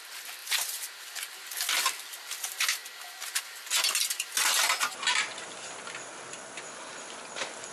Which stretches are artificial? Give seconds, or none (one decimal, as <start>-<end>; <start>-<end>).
0.4-1.1